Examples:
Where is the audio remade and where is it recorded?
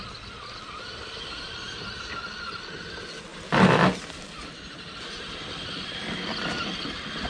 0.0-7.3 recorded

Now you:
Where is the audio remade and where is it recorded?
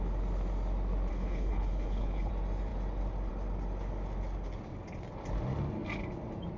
0.0-1.1 recorded; 1.1-2.3 remade; 2.3-6.6 recorded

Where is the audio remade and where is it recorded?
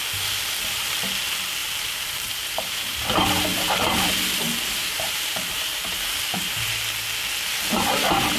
0.0-1.6 recorded; 1.6-3.1 remade; 3.1-3.5 recorded; 3.5-4.1 remade; 4.1-4.8 recorded; 4.8-6.7 remade; 6.7-8.4 recorded